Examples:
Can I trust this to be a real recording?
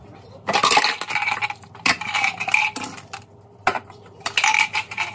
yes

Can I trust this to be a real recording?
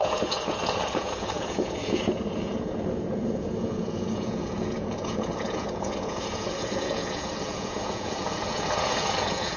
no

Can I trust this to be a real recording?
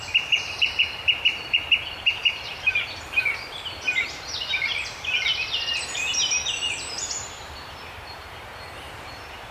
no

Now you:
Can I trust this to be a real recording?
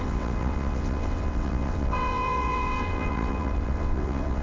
no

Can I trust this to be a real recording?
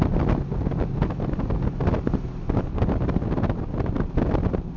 yes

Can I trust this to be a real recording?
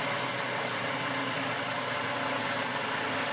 yes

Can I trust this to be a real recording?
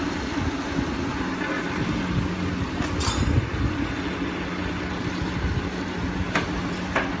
yes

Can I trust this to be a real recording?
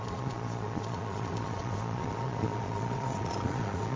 no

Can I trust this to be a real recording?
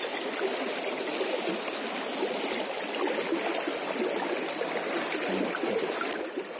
yes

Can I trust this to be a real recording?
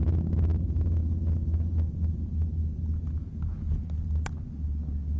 yes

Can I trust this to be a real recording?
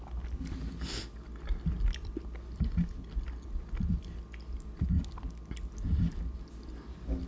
yes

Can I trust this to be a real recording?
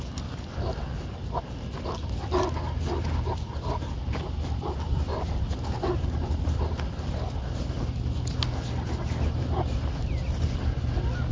yes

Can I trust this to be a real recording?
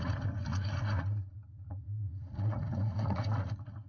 no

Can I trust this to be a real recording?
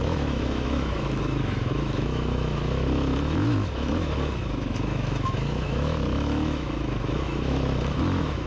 no